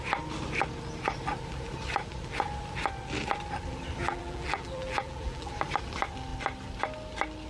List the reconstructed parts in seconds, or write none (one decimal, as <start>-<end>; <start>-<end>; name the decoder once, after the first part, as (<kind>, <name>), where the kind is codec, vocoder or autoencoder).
4.0-5.5 (vocoder, BigVGAN v2)